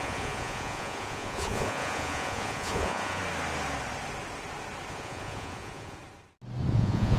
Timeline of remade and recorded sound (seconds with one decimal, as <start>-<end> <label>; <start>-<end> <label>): 0.0-3.2 remade; 3.2-4.9 recorded; 4.9-6.0 remade; 6.0-6.7 recorded; 6.7-7.2 remade